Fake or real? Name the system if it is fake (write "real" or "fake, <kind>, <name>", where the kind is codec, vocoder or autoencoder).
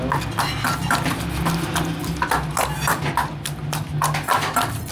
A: real